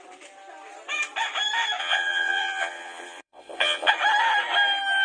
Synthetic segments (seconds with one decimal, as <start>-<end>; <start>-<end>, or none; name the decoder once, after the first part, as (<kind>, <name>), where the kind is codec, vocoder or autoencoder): 1.8-3.9 (vocoder, Vocos)